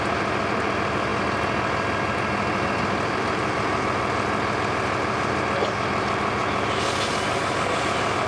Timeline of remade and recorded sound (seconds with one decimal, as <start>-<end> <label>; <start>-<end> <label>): 0.0-8.3 recorded